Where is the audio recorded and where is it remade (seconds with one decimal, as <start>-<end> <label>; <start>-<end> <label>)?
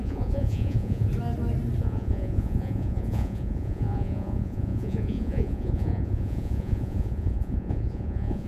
0.0-1.1 remade; 1.1-1.8 recorded; 1.8-8.5 remade